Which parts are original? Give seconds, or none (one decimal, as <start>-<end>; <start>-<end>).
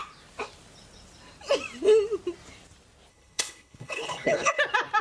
0.0-3.1; 4.6-5.0